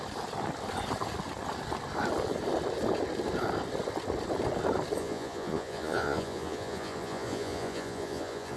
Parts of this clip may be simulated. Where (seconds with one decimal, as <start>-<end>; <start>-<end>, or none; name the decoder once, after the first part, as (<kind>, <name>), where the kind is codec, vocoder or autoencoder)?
5.0-8.6 (vocoder, Vocos)